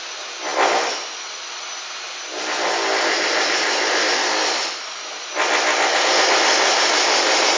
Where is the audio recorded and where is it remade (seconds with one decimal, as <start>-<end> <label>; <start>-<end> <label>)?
0.0-7.6 recorded